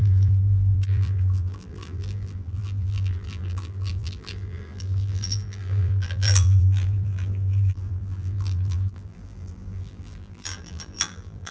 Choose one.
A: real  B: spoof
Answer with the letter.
B